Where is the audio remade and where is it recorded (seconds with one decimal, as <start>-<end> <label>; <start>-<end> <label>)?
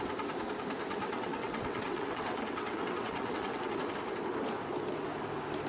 0.0-1.0 recorded; 1.0-3.7 remade; 3.7-5.7 recorded